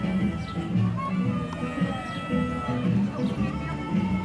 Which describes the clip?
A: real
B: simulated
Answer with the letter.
A